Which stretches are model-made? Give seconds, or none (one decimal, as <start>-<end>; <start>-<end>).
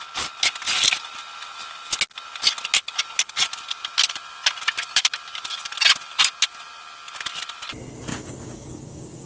8.1-9.3